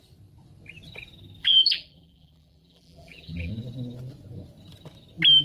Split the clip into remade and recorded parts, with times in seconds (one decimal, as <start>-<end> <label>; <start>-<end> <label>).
0.0-1.4 recorded; 1.4-3.5 remade; 3.5-5.4 recorded